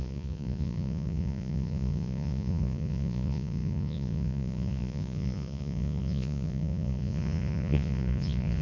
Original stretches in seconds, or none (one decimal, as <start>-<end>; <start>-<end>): none